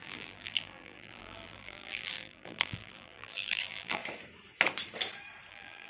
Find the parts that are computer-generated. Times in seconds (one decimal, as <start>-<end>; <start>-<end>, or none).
0.0-4.0; 5.5-5.9